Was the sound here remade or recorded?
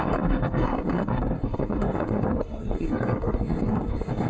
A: remade